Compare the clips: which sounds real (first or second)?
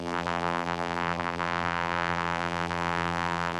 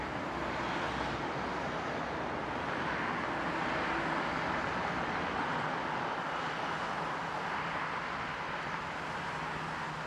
second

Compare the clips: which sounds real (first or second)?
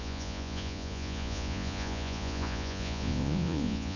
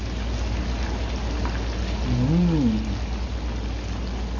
second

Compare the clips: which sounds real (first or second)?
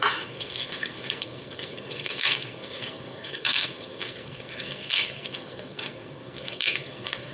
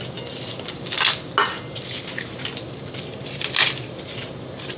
second